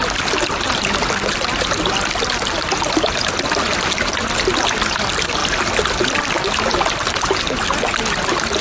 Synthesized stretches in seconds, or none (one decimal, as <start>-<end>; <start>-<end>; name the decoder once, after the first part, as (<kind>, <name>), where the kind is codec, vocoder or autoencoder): none